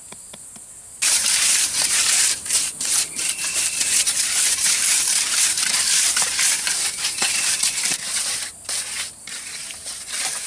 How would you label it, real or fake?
fake